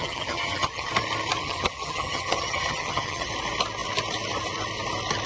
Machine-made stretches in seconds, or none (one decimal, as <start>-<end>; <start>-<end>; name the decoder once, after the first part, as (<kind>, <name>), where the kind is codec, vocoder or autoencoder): 0.0-0.9 (vocoder, HiFi-GAN); 1.4-3.3